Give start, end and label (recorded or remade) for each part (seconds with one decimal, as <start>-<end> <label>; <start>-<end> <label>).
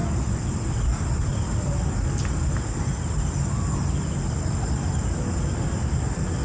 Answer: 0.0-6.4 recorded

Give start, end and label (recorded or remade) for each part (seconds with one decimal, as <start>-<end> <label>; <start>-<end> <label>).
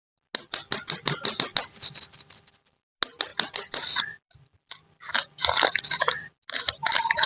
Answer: 0.0-7.3 recorded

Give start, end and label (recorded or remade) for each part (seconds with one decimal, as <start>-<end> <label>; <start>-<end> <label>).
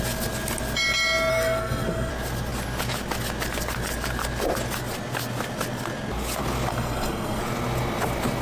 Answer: 0.0-1.3 recorded; 1.3-2.1 remade; 2.1-6.7 recorded; 6.7-7.4 remade; 7.4-8.4 recorded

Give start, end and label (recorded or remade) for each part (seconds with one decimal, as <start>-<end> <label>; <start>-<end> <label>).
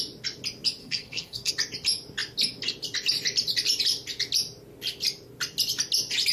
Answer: 0.0-0.8 recorded; 0.8-1.5 remade; 1.5-6.3 recorded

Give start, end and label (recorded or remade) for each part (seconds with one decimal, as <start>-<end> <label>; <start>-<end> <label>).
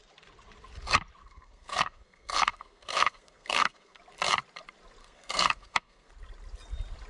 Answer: 0.0-1.2 recorded; 1.2-4.0 remade; 4.0-5.0 recorded; 5.0-6.1 remade; 6.1-7.1 recorded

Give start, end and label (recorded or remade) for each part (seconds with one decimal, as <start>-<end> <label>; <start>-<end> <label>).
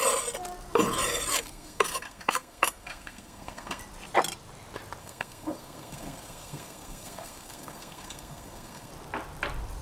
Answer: 0.0-1.3 recorded; 1.3-3.8 remade; 3.8-5.0 recorded; 5.0-8.9 remade; 8.9-9.8 recorded